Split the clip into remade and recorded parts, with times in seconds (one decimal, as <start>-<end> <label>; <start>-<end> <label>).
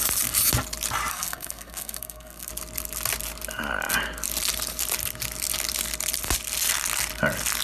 0.0-1.1 recorded; 1.1-2.5 remade; 2.5-7.6 recorded